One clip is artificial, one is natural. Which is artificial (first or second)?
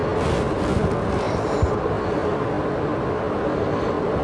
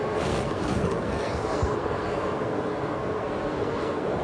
second